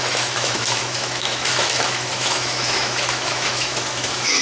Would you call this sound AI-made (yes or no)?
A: yes